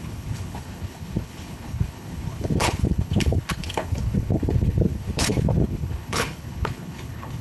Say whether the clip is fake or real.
fake